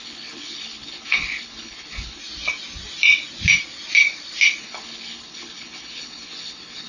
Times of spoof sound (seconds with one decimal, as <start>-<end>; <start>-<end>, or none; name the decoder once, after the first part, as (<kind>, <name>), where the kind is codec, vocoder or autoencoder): 0.0-2.2 (codec, HILCodec); 4.6-6.9

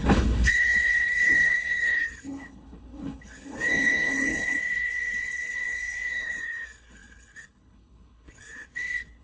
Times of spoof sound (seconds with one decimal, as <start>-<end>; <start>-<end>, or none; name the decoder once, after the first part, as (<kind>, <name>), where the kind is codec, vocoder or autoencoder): 0.0-9.2 (codec, HILCodec)

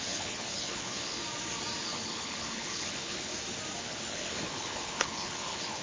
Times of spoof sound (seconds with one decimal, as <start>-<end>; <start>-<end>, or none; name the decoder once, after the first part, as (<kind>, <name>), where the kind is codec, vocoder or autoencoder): 0.0-1.2 (codec, HILCodec); 1.8-3.3; 3.8-5.8

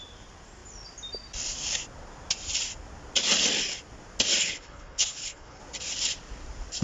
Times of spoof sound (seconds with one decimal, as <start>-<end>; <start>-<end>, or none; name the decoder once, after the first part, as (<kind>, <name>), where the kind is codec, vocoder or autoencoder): 4.4-5.6 (codec, HILCodec)

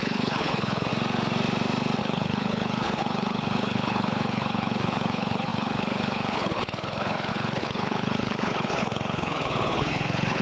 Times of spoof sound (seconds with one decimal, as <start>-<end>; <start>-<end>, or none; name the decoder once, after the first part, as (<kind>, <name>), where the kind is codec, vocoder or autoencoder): 0.0-0.9 (codec, HILCodec); 2.0-10.4

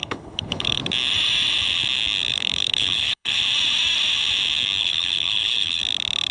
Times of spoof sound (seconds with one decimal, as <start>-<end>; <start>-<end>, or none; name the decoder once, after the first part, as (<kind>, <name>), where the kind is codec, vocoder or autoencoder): 0.0-0.8 (codec, HILCodec); 2.3-3.4; 4.8-5.8